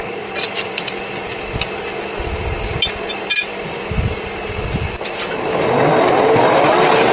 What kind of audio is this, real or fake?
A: real